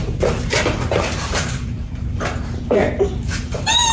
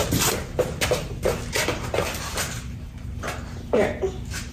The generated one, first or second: first